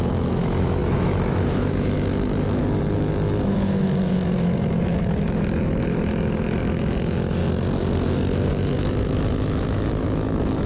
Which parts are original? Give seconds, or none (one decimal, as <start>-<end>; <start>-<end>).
7.4-8.5